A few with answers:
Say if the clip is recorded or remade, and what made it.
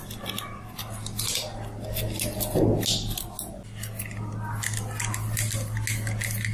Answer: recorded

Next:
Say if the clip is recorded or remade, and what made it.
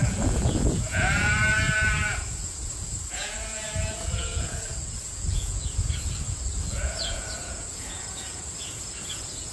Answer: remade, vocoder, Vocos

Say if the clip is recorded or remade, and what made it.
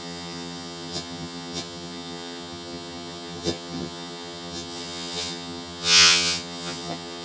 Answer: remade, vocoder, HiFi-GAN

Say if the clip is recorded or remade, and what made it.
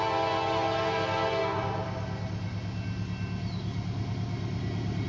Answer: recorded